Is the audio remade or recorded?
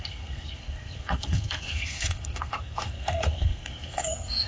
remade